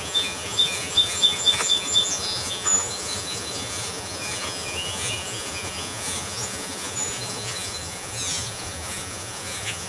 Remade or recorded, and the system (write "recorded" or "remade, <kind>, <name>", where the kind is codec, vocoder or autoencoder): remade, vocoder, Vocos